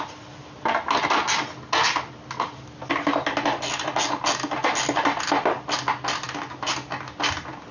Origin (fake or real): real